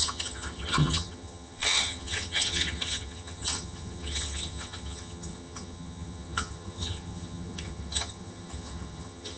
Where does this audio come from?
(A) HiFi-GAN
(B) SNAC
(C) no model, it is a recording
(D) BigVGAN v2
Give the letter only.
A